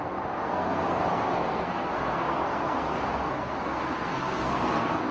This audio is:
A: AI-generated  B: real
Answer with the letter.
A